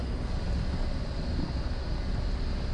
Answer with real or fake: real